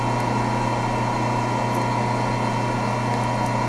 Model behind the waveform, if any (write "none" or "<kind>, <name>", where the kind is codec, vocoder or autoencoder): none